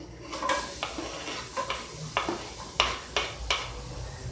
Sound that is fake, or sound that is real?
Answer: real